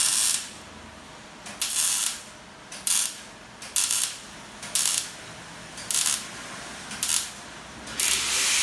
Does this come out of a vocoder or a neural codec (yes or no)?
no